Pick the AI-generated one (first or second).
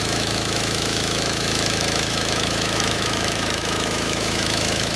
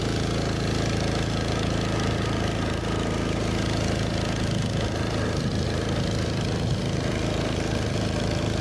first